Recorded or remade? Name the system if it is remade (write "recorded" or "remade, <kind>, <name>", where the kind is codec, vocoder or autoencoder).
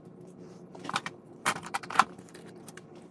remade, vocoder, BigVGAN v2